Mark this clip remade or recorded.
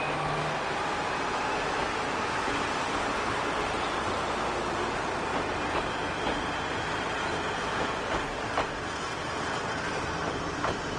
recorded